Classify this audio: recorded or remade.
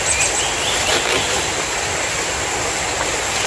recorded